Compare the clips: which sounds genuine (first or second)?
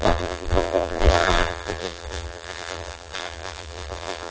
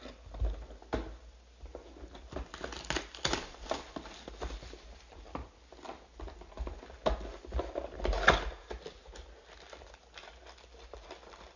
second